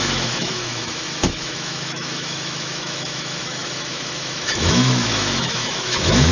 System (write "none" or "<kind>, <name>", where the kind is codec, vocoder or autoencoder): autoencoder, DAC-VAE